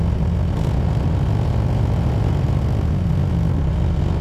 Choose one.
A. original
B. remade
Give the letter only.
A